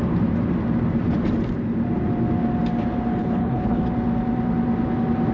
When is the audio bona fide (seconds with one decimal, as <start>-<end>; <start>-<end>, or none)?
0.0-3.2; 3.8-5.3